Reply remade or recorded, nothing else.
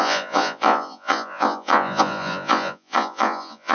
remade